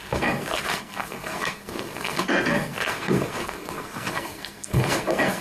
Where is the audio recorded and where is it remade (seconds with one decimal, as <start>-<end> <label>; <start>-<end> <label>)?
0.0-5.4 remade